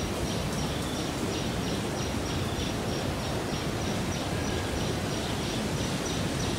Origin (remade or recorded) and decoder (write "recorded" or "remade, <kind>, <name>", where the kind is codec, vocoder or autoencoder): recorded